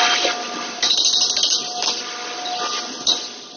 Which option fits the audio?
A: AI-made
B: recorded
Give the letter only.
B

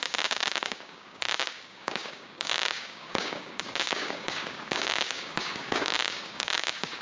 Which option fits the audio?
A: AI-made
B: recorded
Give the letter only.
A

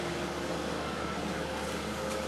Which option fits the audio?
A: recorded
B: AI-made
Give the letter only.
B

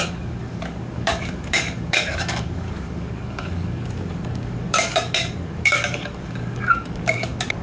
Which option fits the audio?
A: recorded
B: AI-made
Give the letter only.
B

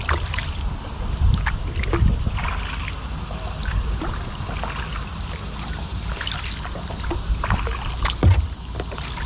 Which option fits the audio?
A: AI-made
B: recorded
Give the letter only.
B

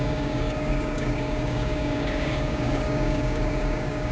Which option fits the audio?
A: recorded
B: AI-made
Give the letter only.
B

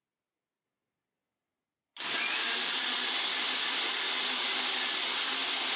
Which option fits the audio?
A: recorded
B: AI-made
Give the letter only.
A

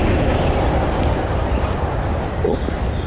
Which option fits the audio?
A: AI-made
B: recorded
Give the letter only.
B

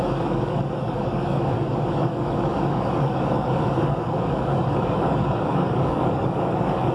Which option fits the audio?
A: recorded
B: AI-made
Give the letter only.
B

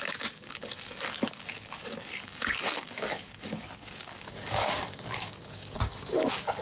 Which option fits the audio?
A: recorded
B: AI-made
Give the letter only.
B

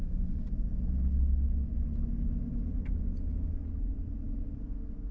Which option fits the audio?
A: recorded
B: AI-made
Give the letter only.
A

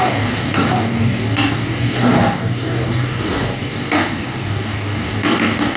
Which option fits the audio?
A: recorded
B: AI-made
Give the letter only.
B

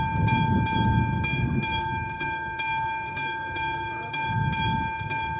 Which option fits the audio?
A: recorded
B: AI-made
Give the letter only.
B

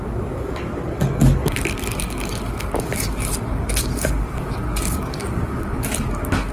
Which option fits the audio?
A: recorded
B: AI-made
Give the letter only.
B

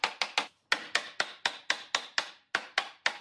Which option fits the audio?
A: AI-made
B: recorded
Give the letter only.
B